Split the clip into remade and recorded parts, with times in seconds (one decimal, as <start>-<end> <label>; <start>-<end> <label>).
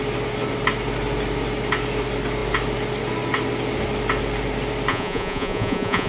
0.0-4.9 recorded; 4.9-6.1 remade